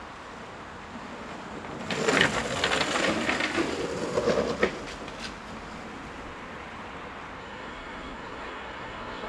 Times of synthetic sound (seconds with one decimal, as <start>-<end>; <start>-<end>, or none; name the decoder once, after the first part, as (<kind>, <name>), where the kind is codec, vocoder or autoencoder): 7.4-9.3 (codec, SNAC)

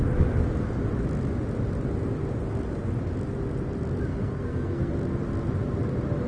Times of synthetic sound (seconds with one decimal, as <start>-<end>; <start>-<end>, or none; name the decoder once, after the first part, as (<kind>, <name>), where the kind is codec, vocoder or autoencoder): 4.1-4.9 (codec, SNAC)

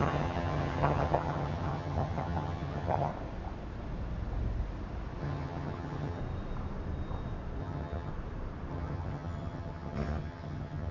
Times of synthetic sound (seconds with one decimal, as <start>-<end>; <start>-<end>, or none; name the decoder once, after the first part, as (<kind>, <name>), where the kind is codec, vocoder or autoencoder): 0.0-3.1 (vocoder, HiFi-GAN); 5.2-6.2; 7.6-8.1; 8.7-10.9

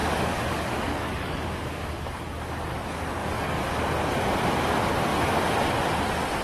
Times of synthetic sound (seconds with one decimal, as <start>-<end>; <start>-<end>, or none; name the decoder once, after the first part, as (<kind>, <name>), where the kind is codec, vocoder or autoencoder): 0.0-2.7 (codec, DAC); 3.2-3.8

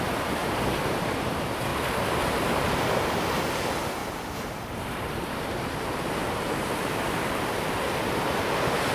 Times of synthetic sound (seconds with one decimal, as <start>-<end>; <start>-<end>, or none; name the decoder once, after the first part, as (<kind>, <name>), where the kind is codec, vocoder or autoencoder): 4.0-8.9 (vocoder, BigVGAN v2)

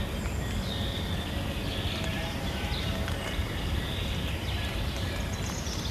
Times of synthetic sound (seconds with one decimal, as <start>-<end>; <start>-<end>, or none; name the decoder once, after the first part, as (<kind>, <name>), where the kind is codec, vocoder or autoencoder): 2.1-4.8 (vocoder, BigVGAN v2)

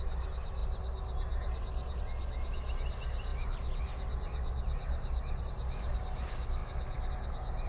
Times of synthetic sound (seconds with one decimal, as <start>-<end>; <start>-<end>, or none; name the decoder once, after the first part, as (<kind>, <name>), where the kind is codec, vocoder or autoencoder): none